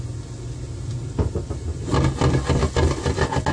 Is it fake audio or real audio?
real